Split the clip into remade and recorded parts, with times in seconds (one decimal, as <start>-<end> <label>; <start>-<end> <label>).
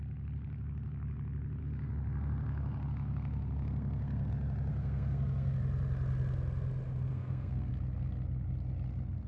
0.0-1.6 recorded; 1.6-4.3 remade; 4.3-4.7 recorded; 4.7-5.6 remade; 5.6-7.1 recorded; 7.1-7.7 remade; 7.7-9.3 recorded